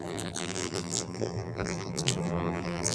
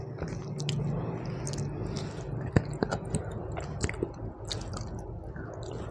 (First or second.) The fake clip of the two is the first